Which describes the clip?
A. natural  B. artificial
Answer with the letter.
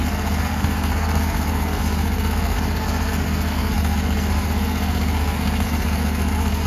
B